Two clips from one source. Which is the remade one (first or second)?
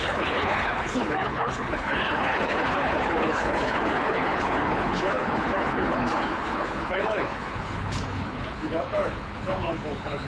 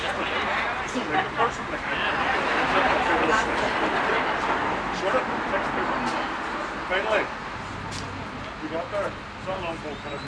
first